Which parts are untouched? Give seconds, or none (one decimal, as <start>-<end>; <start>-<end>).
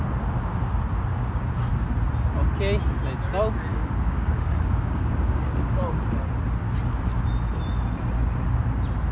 0.0-1.1; 1.7-3.7; 5.4-9.1